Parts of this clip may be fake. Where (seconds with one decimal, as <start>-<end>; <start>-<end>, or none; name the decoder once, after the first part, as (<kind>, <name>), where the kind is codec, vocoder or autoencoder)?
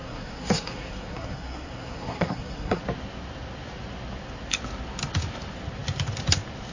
0.0-2.8 (codec, SNAC)